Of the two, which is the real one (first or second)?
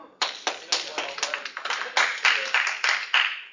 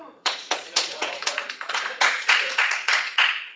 first